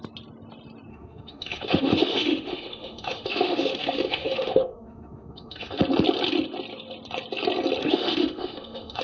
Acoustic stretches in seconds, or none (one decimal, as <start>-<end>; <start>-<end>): 0.0-0.9; 5.8-7.8